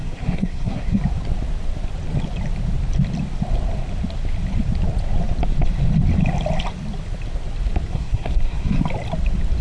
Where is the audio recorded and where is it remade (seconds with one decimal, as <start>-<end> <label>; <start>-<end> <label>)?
0.0-1.0 remade; 1.0-7.9 recorded; 7.9-8.8 remade; 8.8-9.6 recorded